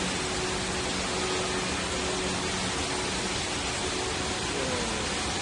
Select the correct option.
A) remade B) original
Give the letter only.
B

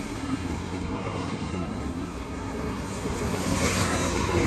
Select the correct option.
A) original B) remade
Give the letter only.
B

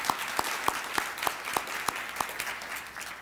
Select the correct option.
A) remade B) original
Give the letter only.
B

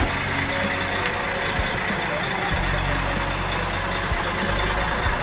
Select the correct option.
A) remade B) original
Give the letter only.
B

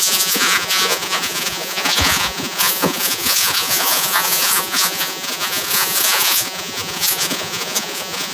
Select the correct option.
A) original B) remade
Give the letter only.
B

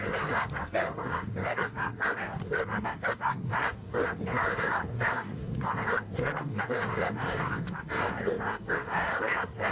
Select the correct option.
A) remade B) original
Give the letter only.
A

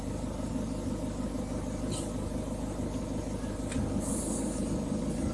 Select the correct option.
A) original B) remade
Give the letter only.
A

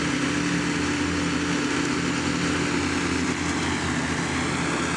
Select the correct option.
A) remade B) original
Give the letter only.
B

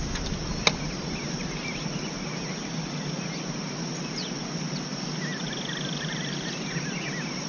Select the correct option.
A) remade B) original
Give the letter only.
B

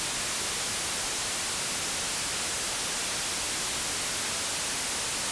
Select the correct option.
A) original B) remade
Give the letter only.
A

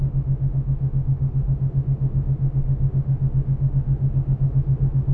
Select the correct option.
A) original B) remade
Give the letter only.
B